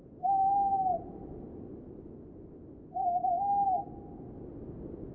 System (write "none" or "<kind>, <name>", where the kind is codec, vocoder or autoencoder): none